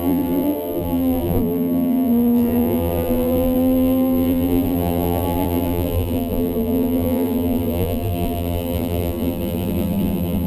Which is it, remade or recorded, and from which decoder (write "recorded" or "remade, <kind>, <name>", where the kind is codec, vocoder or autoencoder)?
remade, vocoder, BigVGAN v2